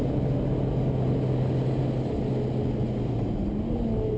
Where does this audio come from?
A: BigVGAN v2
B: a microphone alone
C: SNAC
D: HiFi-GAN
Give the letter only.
B